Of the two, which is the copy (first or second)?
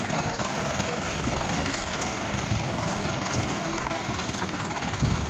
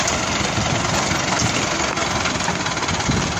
first